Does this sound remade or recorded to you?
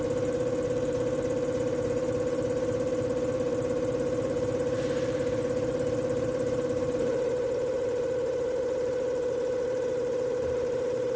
remade